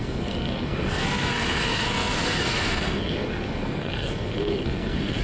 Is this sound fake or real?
fake